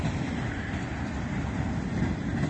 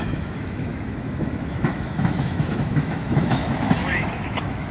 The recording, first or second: first